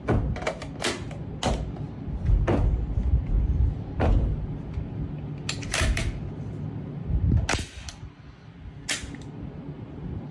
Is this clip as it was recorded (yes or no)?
yes